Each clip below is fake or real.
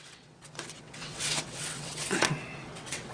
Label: fake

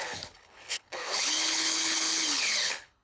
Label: fake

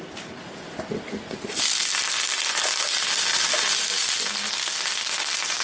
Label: real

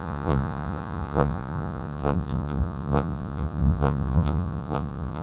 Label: fake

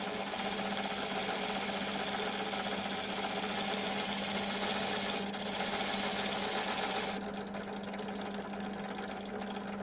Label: real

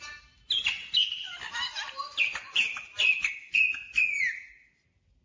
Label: real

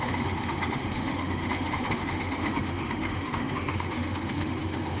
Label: fake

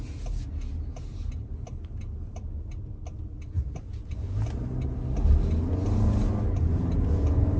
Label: real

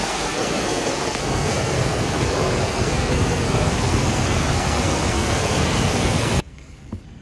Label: fake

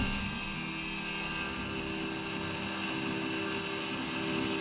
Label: real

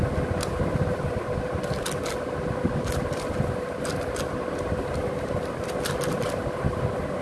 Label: real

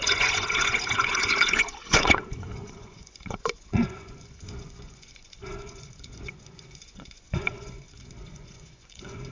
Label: fake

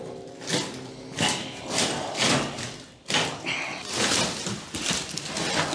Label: real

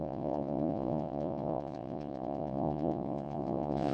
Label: fake